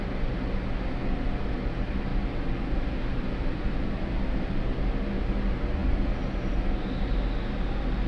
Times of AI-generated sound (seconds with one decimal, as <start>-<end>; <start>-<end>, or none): none